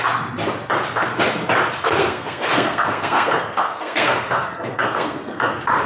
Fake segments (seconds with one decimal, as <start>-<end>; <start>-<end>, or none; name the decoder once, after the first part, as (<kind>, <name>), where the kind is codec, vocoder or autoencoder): 2.0-5.5 (codec, SNAC)